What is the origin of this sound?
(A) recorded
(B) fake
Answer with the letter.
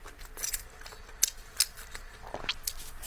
A